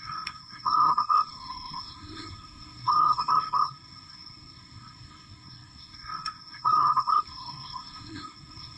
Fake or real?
fake